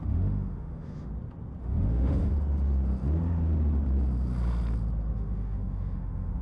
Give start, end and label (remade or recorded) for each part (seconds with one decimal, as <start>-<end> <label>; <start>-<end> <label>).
0.0-1.1 remade; 1.1-1.6 recorded; 1.6-2.3 remade; 2.3-5.1 recorded; 5.1-6.4 remade